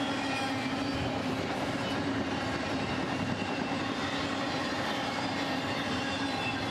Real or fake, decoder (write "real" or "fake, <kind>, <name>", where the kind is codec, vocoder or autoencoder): real